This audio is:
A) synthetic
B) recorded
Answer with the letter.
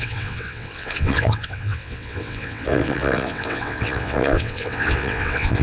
A